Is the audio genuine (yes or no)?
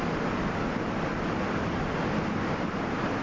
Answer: yes